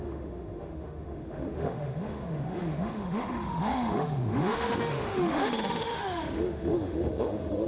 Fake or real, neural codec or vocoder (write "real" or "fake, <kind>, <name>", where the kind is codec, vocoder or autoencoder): fake, autoencoder, DAC-VAE